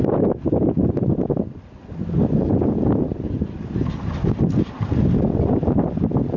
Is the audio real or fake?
real